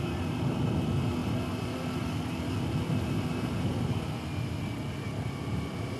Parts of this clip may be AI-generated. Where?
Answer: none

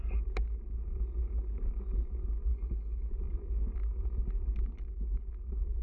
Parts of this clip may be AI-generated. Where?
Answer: 2.5-3.1 (codec, HILCodec)

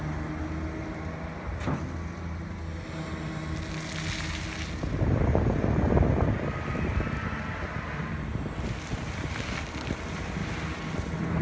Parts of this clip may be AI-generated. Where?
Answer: none

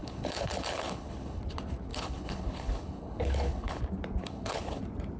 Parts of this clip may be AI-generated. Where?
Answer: 0.0-1.4 (codec, HILCodec); 1.9-3.8; 4.2-4.8